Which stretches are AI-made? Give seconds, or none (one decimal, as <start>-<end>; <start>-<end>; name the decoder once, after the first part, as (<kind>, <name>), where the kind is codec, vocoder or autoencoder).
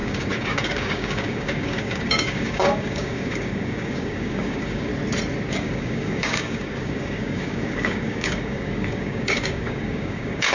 0.0-4.9 (codec, DAC); 5.5-10.5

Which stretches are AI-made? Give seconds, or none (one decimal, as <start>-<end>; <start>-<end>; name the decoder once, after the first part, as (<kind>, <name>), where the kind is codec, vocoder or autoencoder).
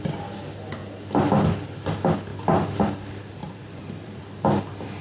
3.4-4.2 (vocoder, BigVGAN v2)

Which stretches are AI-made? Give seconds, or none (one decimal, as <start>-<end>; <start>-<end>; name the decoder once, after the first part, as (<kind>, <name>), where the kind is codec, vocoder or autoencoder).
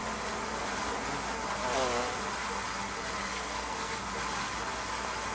3.2-4.0 (codec, SNAC)